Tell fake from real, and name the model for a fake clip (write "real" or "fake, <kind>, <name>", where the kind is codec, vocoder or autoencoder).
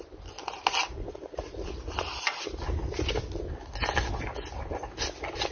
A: real